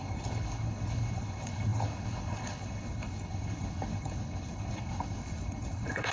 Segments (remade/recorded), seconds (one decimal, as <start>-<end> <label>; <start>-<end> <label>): 0.0-6.1 remade